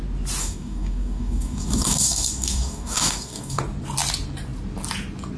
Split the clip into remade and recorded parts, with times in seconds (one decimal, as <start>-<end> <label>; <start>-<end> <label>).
0.0-0.4 recorded; 0.4-3.6 remade; 3.6-5.4 recorded